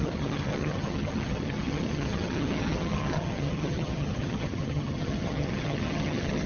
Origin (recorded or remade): remade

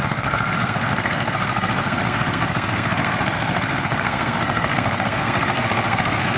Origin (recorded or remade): remade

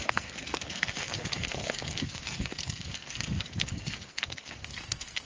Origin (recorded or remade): remade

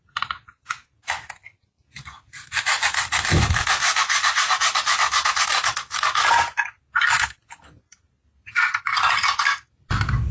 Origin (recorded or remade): recorded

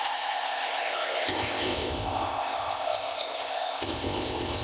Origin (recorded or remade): remade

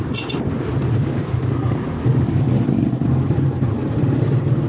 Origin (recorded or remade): remade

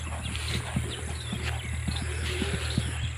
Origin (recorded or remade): recorded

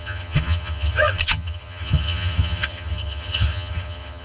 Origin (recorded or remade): remade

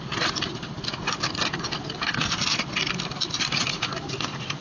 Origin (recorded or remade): recorded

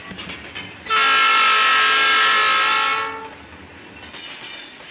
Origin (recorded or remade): recorded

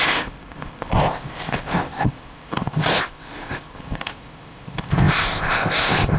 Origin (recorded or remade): remade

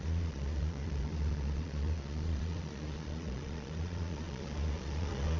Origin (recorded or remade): remade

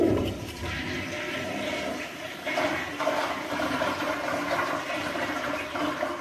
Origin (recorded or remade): remade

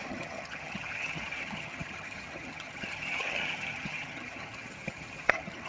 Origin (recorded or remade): remade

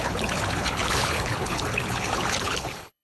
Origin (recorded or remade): remade